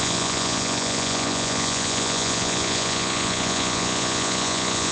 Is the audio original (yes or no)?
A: no